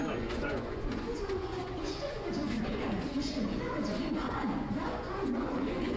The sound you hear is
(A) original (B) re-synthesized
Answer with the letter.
B